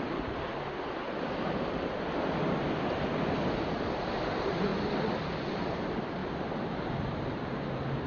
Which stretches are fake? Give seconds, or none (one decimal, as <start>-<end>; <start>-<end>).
0.0-0.5; 3.7-4.7; 5.5-6.2; 7.0-8.1